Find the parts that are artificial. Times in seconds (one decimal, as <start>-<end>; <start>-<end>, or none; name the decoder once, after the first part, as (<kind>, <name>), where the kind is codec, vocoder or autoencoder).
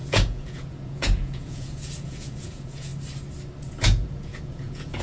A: 0.0-2.9 (vocoder, Vocos); 3.6-5.0